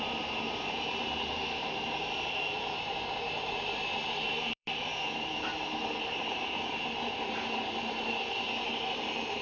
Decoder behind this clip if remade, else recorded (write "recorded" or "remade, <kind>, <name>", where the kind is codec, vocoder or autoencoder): remade, vocoder, BigVGAN v2